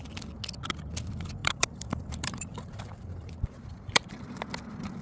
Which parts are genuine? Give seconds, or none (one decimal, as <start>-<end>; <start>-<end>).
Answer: 0.0-1.4; 4.1-5.0